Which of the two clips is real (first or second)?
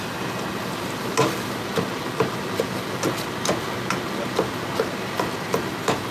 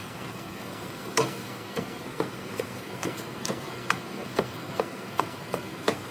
first